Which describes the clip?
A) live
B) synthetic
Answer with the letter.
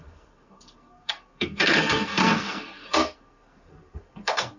B